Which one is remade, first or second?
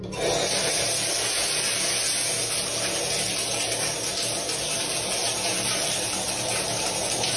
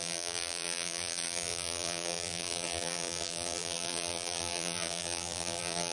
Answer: second